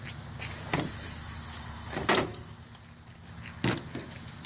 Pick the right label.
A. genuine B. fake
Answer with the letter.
A